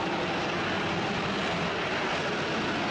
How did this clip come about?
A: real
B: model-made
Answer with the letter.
A